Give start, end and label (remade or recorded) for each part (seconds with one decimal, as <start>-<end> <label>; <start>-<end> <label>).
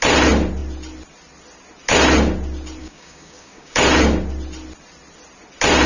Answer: 0.0-2.8 recorded; 2.8-3.8 remade; 3.8-5.9 recorded